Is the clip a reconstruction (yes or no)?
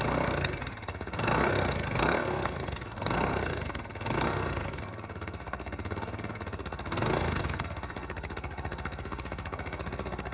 yes